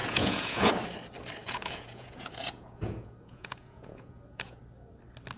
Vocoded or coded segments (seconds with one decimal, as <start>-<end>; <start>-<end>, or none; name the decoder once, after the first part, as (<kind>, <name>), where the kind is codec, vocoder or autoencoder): 0.0-0.7 (vocoder, Vocos); 1.4-4.6